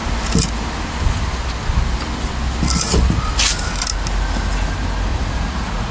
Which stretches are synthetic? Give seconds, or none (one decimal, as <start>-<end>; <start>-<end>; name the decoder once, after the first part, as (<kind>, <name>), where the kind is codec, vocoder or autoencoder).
5.1-5.9 (vocoder, Vocos)